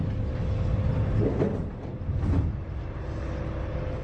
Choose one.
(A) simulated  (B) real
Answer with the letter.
B